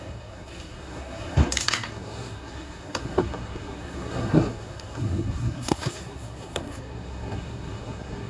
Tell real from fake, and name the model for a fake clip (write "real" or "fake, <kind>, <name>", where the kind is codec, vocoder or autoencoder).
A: fake, codec, SNAC